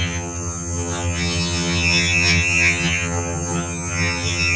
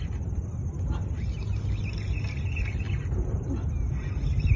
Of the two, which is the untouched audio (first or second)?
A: second